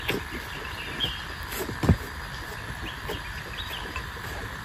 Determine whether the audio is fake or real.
real